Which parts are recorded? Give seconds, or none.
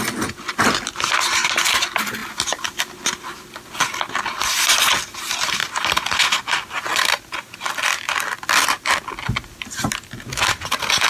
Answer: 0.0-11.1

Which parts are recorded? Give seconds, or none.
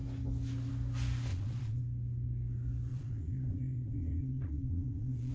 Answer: 0.0-1.3; 1.8-2.9